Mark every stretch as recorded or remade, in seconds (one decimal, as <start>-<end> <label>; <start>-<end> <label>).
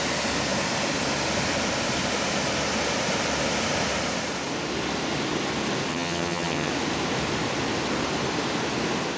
0.0-5.9 recorded; 5.9-6.7 remade; 6.7-9.2 recorded